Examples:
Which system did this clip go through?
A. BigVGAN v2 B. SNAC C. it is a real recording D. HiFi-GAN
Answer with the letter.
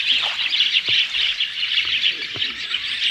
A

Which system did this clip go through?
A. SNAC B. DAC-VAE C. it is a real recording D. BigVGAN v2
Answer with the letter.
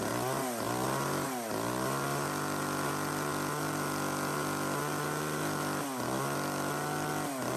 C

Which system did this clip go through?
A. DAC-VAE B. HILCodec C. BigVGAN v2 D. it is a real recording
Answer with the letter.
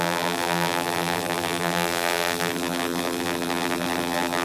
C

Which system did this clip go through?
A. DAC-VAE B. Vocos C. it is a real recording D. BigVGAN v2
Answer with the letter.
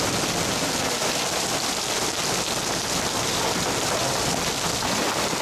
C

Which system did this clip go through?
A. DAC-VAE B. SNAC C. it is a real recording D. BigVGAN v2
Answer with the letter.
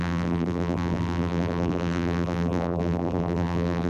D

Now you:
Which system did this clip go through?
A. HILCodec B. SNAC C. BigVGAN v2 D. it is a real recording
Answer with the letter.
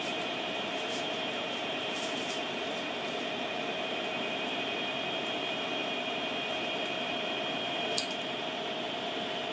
C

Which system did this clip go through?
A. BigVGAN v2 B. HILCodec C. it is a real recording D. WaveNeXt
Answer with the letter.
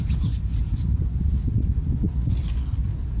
C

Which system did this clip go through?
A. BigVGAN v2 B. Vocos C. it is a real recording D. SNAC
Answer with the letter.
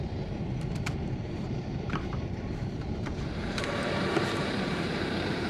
A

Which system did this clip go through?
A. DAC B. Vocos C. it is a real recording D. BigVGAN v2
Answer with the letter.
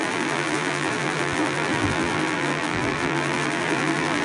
D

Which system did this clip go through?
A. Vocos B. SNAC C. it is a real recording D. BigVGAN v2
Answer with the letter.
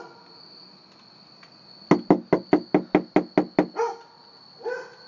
C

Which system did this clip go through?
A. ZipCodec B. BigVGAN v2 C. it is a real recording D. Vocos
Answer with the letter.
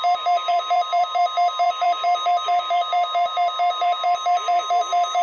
B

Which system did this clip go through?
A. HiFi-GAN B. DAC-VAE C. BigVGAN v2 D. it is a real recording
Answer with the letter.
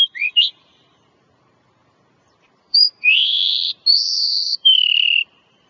C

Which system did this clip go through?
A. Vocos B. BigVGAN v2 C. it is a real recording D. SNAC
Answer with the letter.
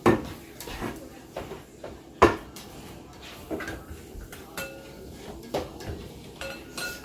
B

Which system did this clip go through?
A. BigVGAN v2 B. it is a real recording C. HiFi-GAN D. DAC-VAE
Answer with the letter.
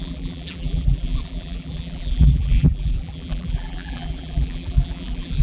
A